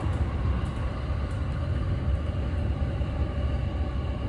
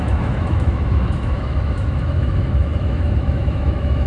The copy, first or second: second